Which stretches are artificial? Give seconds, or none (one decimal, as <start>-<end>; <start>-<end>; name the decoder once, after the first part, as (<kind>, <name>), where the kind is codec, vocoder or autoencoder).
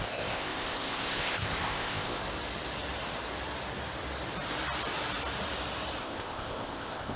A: 0.0-2.2 (codec, ZipCodec); 6.0-7.2